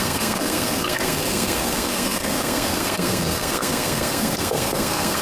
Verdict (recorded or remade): remade